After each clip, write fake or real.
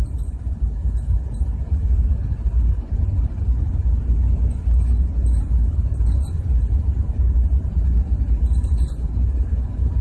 real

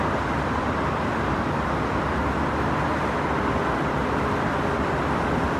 real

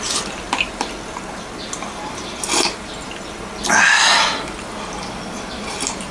real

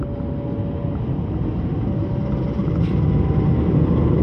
real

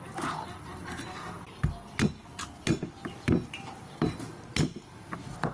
real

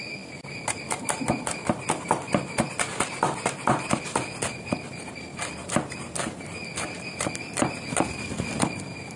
fake